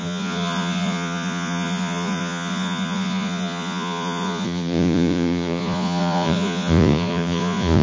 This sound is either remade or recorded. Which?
remade